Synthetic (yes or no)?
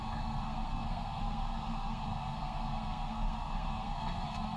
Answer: yes